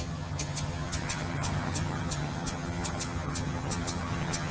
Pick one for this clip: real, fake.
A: fake